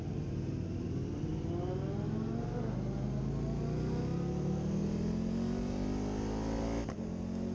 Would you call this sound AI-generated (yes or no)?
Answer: no